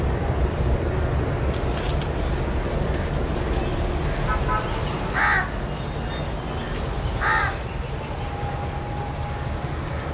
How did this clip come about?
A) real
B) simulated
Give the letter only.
A